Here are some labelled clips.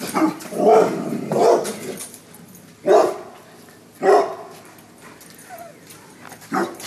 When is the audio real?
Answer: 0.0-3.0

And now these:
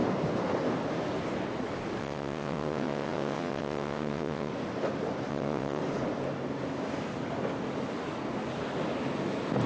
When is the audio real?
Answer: 0.0-2.0; 4.5-5.3; 5.8-9.7

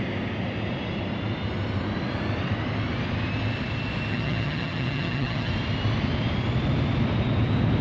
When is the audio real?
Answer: 0.0-4.1; 5.5-7.8

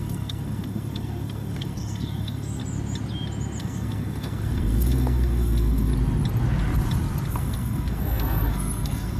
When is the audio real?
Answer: 2.6-3.6; 5.9-7.3

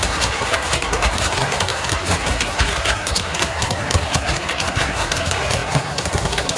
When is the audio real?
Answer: none